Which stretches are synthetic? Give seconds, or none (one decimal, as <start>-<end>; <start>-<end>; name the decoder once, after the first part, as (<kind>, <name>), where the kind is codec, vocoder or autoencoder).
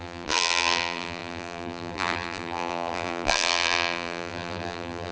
0.0-5.1 (vocoder, BigVGAN v2)